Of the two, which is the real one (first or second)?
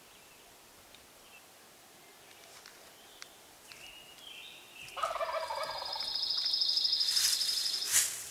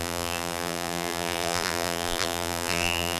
first